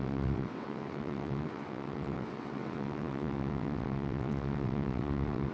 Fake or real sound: fake